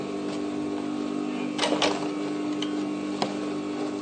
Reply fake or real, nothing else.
real